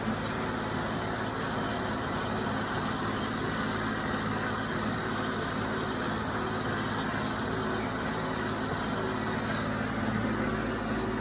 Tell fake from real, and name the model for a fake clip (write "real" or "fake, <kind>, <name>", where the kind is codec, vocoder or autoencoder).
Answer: real